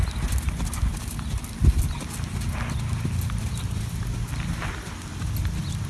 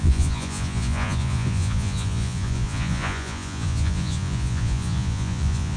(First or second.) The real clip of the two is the first